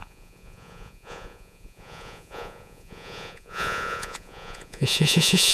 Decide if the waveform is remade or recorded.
remade